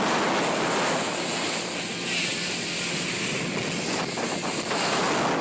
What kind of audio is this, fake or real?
real